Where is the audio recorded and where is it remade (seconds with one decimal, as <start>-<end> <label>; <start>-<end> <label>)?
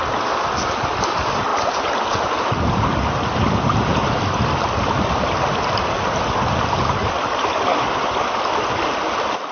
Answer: 0.0-1.5 recorded; 1.5-4.4 remade; 4.4-9.5 recorded